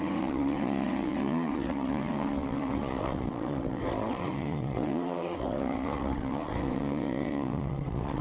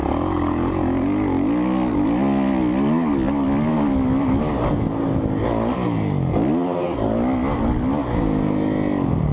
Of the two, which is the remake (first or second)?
first